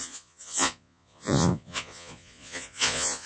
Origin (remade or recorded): remade